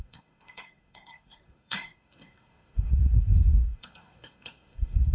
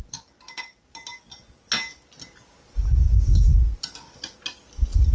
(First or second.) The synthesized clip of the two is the first